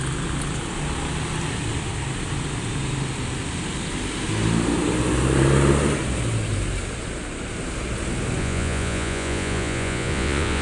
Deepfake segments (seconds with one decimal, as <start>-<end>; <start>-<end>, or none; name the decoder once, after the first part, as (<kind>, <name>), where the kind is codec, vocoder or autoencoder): 8.4-10.6 (vocoder, Vocos)